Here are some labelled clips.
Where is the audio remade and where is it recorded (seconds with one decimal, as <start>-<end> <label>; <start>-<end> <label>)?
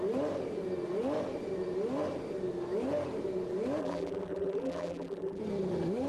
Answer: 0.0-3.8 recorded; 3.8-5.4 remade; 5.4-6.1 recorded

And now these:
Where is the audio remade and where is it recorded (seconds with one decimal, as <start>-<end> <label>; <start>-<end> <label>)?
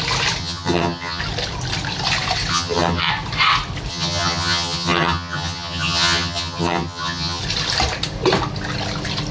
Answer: 0.0-0.4 recorded; 0.4-1.2 remade; 1.2-2.5 recorded; 2.5-3.1 remade; 3.1-3.9 recorded; 3.9-7.4 remade; 7.4-9.3 recorded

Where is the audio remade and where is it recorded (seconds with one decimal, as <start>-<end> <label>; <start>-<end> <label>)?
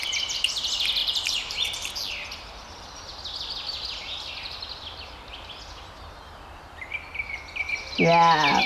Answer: 0.0-1.0 recorded; 1.0-1.9 remade; 1.9-8.7 recorded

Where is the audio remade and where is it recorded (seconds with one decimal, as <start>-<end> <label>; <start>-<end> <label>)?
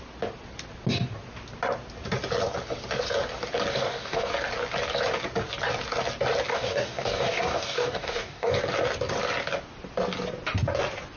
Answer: 0.0-3.7 recorded; 3.7-4.3 remade; 4.3-6.5 recorded; 6.5-8.5 remade; 8.5-11.2 recorded